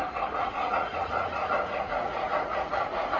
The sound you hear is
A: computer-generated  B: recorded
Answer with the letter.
A